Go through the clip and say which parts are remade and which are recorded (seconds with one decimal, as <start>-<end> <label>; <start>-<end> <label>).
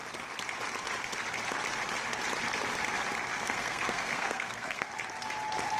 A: 0.0-3.3 recorded; 3.3-4.9 remade; 4.9-5.8 recorded